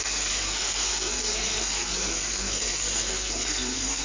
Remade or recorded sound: remade